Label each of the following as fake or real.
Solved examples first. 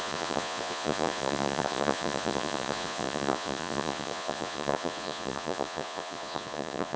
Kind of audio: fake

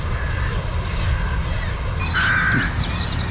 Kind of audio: real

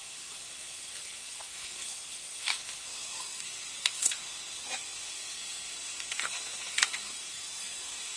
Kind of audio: fake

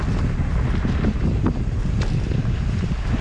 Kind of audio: real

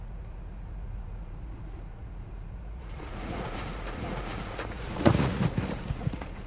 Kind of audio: fake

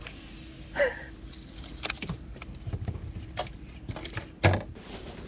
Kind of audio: real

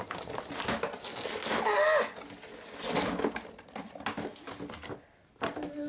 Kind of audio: real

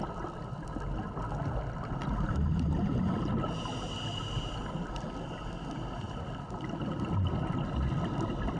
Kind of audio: real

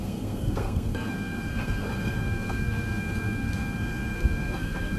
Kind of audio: fake